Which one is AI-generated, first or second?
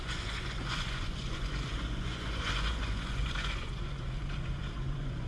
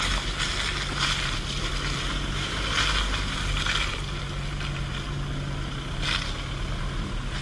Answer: first